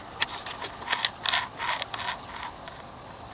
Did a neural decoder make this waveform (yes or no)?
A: no